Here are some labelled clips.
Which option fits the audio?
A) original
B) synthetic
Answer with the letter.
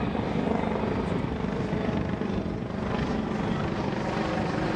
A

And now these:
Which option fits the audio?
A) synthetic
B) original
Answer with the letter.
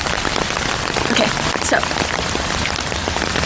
B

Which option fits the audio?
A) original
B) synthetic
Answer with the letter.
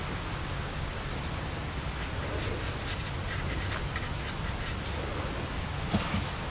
A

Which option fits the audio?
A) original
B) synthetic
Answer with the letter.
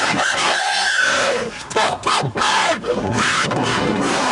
B